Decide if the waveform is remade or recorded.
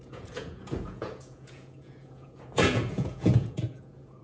remade